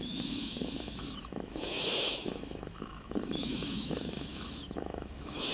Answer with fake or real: fake